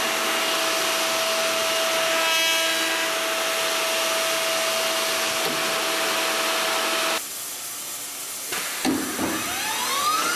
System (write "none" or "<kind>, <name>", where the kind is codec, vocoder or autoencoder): none